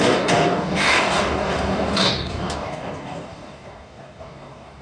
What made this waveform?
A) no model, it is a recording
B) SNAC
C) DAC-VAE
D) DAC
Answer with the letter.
D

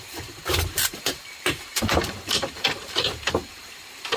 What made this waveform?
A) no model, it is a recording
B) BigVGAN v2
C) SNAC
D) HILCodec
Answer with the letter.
B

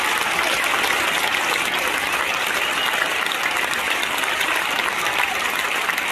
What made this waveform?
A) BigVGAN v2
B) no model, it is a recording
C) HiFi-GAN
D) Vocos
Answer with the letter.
B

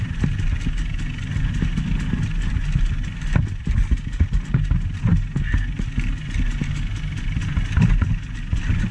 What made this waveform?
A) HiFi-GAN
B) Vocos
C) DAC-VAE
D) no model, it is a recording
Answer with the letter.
D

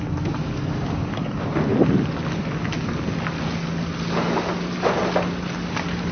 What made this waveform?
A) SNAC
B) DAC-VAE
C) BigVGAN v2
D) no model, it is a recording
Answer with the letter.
D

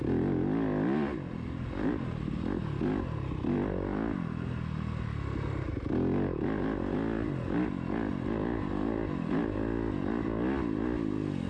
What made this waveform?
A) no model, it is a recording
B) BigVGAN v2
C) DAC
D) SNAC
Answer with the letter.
A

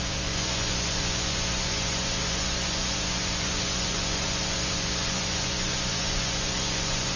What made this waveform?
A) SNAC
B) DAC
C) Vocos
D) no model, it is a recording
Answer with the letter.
C